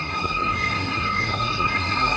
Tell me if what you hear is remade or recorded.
remade